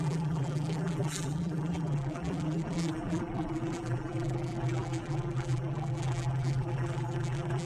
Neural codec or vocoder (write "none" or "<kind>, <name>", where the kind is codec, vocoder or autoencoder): vocoder, BigVGAN v2